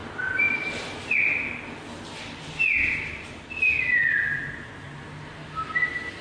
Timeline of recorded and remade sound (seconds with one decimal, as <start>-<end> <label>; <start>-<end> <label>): 0.0-6.2 recorded